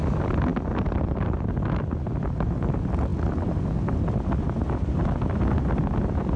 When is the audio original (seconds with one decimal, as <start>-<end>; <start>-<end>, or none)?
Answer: 0.0-6.4

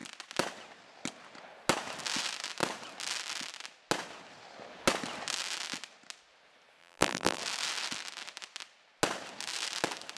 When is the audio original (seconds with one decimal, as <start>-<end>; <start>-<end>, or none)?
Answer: 0.0-6.8; 7.4-10.2